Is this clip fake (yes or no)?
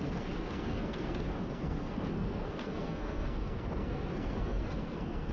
yes